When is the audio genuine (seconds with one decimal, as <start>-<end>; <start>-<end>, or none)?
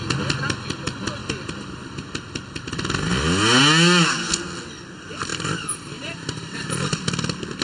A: 0.0-1.2; 2.7-5.3